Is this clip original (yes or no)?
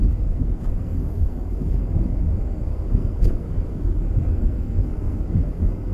no